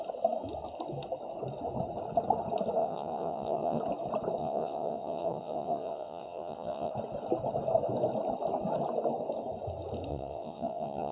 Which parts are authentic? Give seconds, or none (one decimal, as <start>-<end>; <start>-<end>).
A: 0.0-2.8; 3.8-4.4; 6.9-10.1